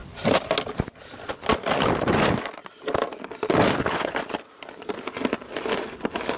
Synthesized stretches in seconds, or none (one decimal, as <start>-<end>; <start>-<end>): 3.8-4.2